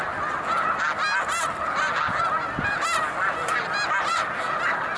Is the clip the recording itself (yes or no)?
yes